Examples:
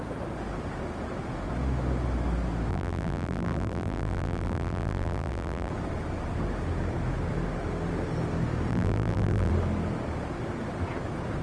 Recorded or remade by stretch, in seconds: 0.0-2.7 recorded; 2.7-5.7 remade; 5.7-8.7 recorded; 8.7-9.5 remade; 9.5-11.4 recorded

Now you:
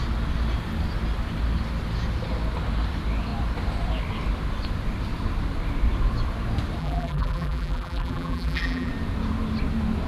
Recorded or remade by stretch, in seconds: 0.0-6.8 recorded; 6.8-8.9 remade; 8.9-10.1 recorded